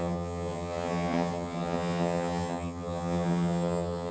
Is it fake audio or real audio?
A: fake